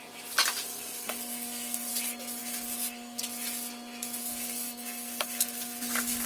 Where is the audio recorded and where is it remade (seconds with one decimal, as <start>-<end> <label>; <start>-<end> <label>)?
0.0-0.6 recorded; 0.6-1.9 remade; 1.9-2.4 recorded; 2.4-3.2 remade; 3.2-4.2 recorded; 4.2-6.3 remade